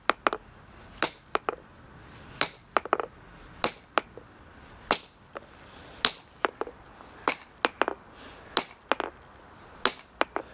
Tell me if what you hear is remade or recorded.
recorded